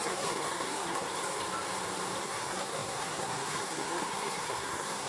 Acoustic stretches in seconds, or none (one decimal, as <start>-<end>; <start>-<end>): 1.1-2.2